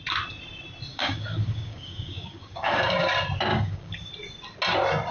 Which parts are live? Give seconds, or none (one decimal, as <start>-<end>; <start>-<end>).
0.0-0.9; 3.1-3.5; 4.1-5.1